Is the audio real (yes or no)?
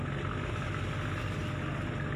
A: yes